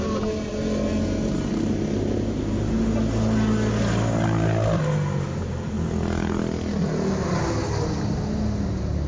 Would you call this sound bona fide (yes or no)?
yes